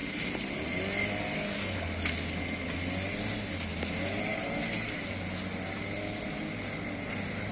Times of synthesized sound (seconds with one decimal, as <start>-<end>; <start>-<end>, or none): none